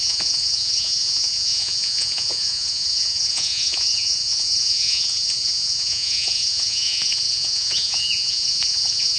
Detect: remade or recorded remade